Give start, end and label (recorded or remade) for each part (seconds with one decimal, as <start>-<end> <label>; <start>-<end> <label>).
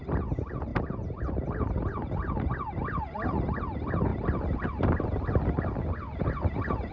0.0-0.7 recorded; 0.7-2.5 remade; 2.5-4.1 recorded; 4.1-5.0 remade; 5.0-6.9 recorded